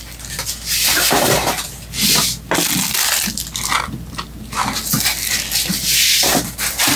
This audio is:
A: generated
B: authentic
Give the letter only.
B